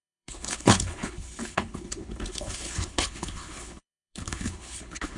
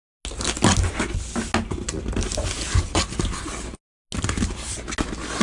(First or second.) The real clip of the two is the second